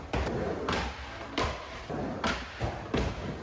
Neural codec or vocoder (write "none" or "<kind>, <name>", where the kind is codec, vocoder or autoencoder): none